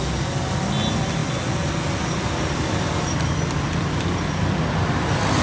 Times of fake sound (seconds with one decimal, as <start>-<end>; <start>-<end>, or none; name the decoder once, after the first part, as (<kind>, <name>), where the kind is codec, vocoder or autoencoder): none

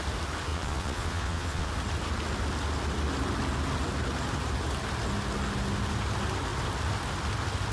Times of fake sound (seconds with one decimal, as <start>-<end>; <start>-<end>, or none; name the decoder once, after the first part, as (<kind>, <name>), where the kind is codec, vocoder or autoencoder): 0.5-1.7 (vocoder, Vocos)

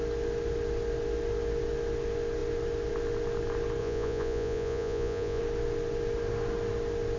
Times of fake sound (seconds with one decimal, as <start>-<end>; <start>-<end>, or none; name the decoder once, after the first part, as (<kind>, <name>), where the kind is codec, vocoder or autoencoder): 3.8-5.4 (vocoder, Vocos)

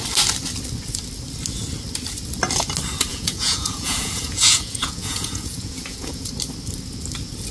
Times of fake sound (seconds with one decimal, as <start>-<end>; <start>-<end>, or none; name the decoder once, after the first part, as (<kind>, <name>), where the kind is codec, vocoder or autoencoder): 3.1-6.3 (vocoder, Vocos)

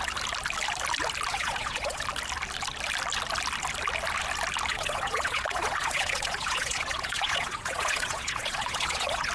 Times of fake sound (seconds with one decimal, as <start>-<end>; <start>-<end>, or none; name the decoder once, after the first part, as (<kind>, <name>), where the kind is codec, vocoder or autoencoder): 1.3-2.0 (vocoder, Vocos); 4.7-9.3

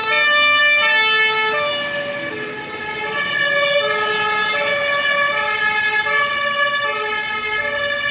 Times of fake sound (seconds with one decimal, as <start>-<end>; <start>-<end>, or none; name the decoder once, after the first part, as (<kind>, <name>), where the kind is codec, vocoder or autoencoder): none

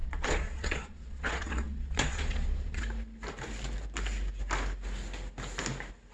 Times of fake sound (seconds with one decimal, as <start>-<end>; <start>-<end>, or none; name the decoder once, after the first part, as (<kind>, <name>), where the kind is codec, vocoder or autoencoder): 0.0-2.8 (vocoder, Vocos)

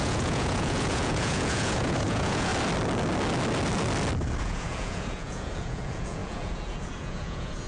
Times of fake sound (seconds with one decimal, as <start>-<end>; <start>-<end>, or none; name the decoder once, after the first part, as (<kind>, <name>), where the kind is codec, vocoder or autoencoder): 0.0-2.5 (vocoder, Vocos); 4.4-7.7